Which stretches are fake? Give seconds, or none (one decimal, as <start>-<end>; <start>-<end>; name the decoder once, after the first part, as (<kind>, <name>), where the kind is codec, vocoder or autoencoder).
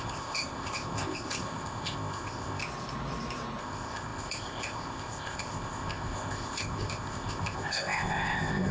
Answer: 0.0-2.6 (codec, ZipCodec); 3.6-8.7